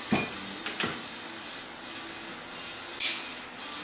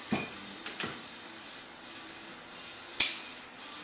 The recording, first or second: first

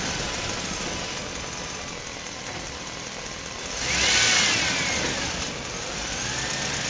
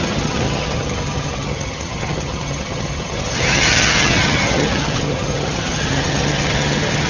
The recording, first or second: first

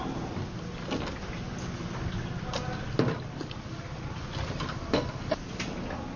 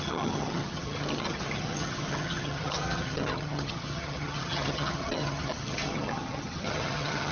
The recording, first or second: first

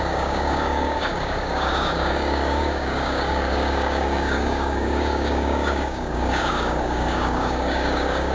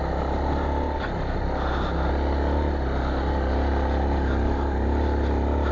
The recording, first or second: second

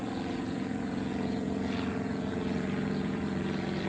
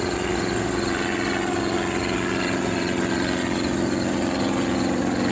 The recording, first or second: second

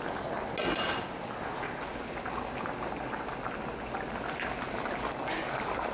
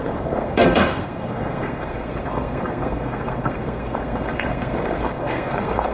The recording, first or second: first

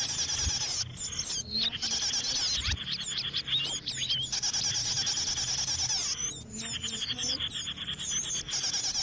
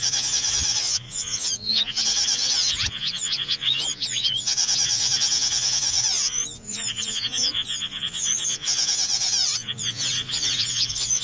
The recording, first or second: first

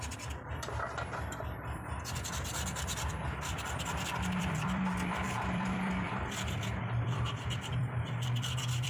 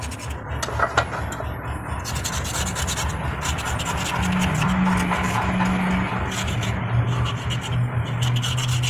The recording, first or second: second